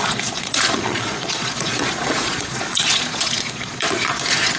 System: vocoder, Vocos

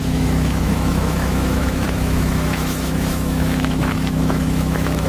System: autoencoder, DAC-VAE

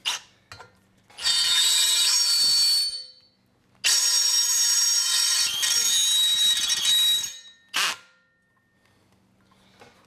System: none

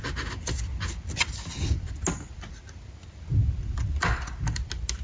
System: none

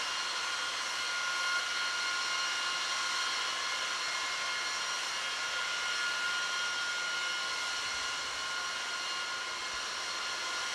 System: none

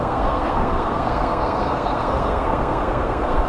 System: codec, SNAC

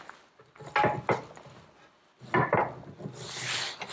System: none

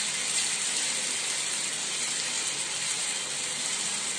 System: none